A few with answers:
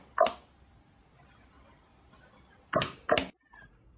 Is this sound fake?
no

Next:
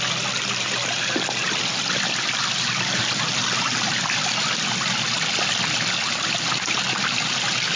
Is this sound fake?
no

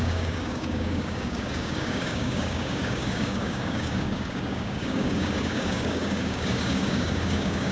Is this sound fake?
yes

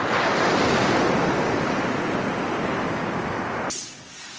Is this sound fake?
no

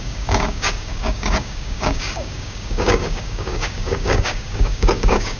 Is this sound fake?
yes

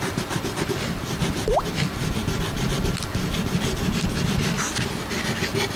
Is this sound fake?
no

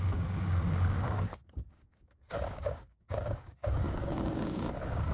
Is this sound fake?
yes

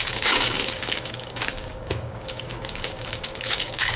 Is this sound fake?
yes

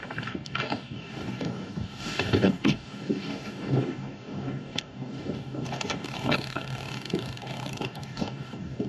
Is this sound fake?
yes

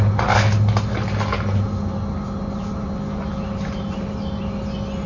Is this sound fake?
no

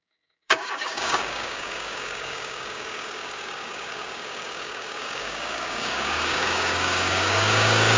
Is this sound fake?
yes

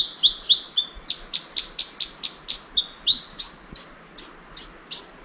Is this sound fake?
no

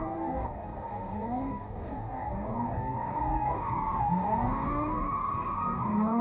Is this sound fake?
yes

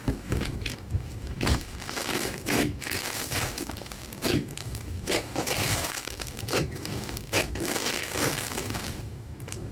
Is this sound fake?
yes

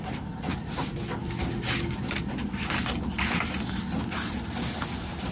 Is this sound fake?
no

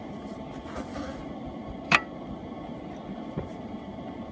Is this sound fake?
no